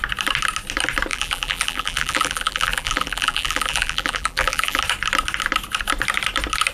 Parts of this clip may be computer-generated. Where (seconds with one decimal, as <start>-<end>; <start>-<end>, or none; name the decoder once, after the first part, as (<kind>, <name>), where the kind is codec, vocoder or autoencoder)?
1.1-4.8 (vocoder, BigVGAN v2)